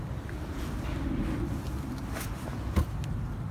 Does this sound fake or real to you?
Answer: real